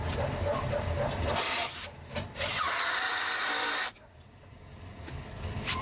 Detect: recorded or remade recorded